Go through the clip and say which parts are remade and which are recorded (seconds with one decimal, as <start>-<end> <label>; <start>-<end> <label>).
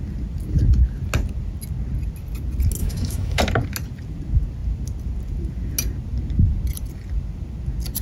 0.0-2.8 recorded; 2.8-3.4 remade; 3.4-8.0 recorded